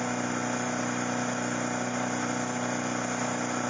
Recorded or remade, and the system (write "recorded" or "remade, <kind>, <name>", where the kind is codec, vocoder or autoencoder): recorded